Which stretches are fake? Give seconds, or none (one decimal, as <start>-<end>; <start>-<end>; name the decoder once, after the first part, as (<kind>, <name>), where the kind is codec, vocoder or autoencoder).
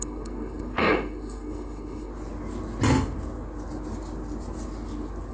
0.0-2.1 (codec, SNAC)